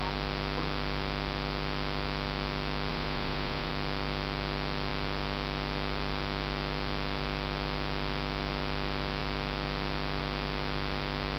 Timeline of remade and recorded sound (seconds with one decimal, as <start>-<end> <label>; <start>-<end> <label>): 0.0-2.9 recorded; 2.9-3.7 remade; 3.7-11.4 recorded

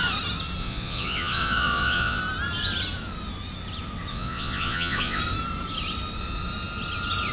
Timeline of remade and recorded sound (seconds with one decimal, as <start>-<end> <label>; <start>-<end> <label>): 0.0-0.6 recorded; 0.6-2.2 remade; 2.2-4.1 recorded; 4.1-5.2 remade; 5.2-7.3 recorded